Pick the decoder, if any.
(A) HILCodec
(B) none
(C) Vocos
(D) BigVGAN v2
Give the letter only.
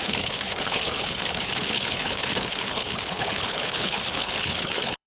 A